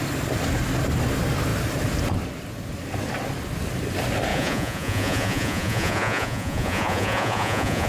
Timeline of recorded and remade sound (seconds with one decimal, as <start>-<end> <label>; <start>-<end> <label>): 0.0-4.3 recorded; 4.3-7.9 remade